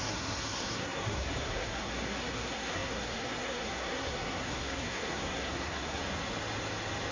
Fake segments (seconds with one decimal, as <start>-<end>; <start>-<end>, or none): 0.0-6.0